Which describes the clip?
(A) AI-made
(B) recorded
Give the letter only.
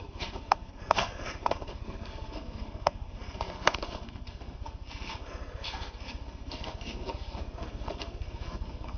A